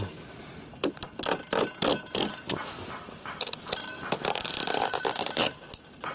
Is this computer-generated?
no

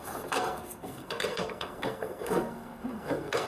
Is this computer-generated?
yes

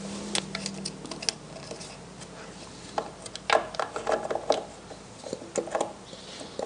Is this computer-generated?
no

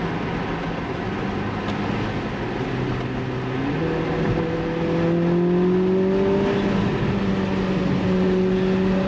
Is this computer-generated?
no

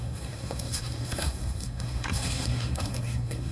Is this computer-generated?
yes